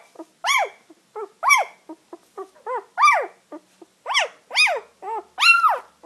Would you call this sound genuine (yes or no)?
yes